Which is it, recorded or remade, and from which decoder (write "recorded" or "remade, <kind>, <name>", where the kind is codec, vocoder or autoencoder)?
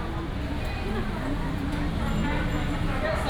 recorded